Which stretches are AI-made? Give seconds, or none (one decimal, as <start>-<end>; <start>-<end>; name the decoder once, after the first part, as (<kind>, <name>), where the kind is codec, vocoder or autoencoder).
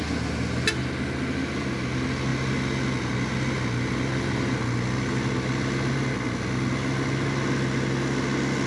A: none